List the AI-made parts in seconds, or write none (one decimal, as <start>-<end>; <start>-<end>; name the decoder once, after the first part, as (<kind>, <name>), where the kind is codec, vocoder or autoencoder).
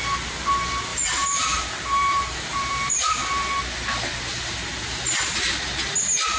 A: 0.9-3.5 (vocoder, BigVGAN v2); 4.3-5.0